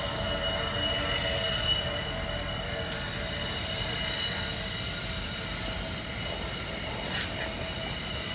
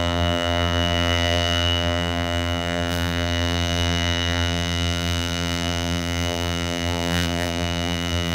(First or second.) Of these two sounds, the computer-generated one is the second